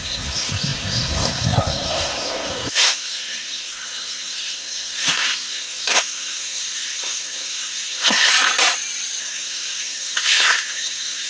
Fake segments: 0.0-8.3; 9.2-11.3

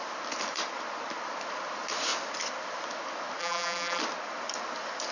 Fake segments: 3.4-4.0

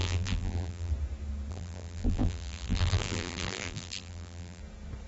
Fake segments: 0.0-0.9; 1.5-4.6

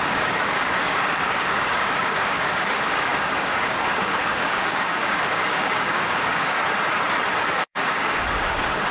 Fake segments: 0.0-6.6; 7.5-8.9

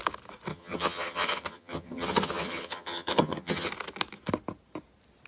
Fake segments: 0.5-3.7

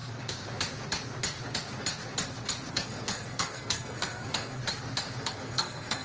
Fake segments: 2.7-4.6; 5.2-6.0